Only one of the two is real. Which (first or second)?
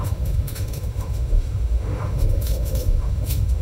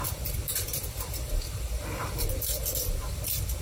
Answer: second